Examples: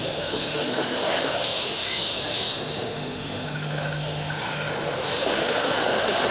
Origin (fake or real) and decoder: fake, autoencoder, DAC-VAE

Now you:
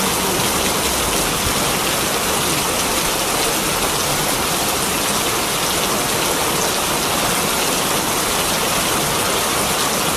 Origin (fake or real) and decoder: real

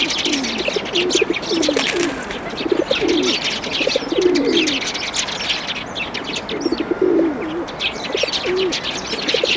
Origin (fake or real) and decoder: real